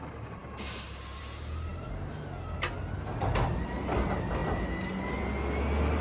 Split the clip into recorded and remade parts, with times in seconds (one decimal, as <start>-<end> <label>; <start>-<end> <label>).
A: 0.0-6.0 recorded